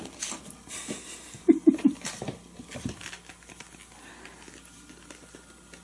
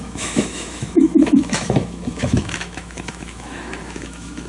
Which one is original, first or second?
first